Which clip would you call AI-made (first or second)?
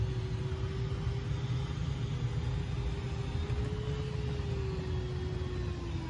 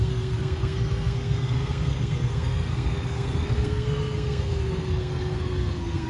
second